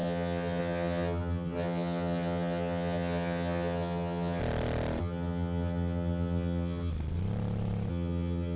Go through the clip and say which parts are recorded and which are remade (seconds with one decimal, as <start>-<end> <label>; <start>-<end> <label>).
0.0-4.4 remade; 4.4-5.0 recorded; 5.0-6.9 remade; 6.9-7.9 recorded; 7.9-8.6 remade